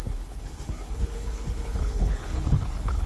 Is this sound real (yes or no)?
no